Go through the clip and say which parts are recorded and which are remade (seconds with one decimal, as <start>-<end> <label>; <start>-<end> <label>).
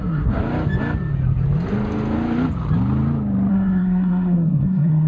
0.0-0.4 remade; 0.4-3.5 recorded; 3.5-5.1 remade